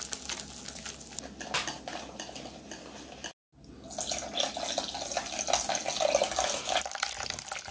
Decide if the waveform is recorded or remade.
recorded